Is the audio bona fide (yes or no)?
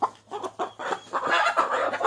yes